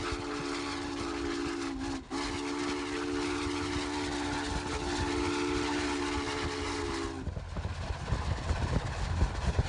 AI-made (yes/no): no